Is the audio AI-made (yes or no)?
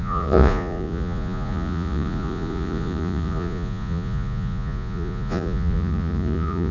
yes